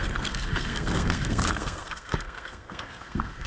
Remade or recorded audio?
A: remade